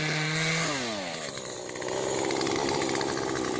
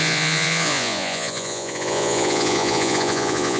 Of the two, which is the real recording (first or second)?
first